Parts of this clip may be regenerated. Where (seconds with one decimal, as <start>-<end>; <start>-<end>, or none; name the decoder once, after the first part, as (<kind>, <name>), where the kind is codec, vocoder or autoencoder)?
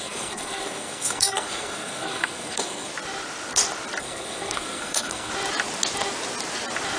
0.0-2.9 (codec, SNAC); 4.0-5.3